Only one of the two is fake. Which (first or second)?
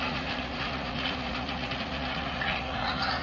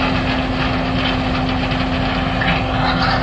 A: first